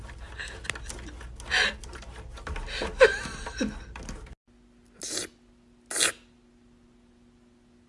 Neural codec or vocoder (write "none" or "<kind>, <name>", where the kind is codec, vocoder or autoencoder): none